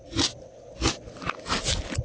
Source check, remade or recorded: recorded